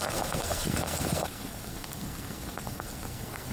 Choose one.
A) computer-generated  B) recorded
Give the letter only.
A